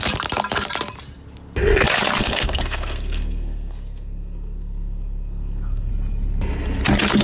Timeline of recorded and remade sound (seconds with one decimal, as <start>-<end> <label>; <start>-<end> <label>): 0.0-2.2 recorded; 2.2-5.9 remade; 5.9-7.2 recorded